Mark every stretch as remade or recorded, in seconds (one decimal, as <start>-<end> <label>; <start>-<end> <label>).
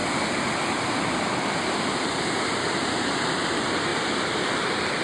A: 0.0-3.0 recorded; 3.0-5.0 remade